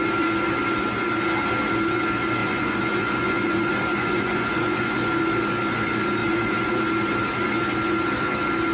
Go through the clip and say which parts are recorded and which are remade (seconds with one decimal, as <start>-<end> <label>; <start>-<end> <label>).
0.0-2.4 recorded; 2.4-5.2 remade; 5.2-6.2 recorded; 6.2-6.7 remade; 6.7-8.7 recorded